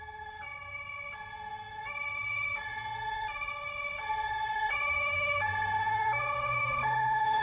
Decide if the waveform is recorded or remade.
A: recorded